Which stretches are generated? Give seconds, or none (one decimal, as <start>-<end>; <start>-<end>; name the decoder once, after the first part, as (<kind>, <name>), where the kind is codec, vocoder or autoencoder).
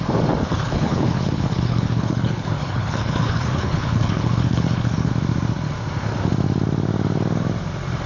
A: 0.4-5.1 (codec, HILCodec)